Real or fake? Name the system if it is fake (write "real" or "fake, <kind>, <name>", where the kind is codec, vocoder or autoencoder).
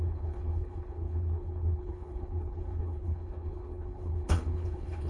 fake, codec, HILCodec